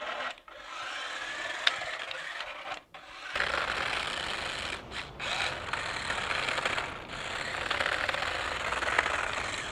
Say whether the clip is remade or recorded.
recorded